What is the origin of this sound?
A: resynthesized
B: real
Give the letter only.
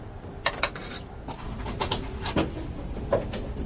B